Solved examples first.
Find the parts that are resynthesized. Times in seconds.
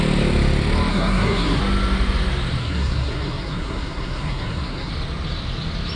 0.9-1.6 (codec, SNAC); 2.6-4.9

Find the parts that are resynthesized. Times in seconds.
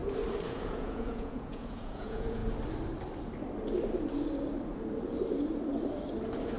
0.5-2.4 (vocoder, Vocos)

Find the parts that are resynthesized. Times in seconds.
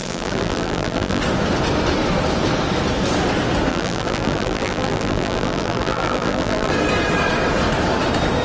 0.0-1.2 (vocoder, BigVGAN v2); 3.7-6.7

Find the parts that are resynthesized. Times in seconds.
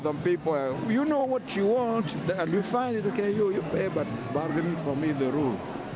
2.6-3.6 (autoencoder, DAC-VAE)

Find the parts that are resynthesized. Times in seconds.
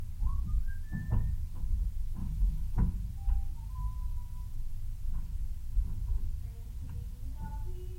2.2-2.8 (autoencoder, DAC-VAE); 4.1-4.7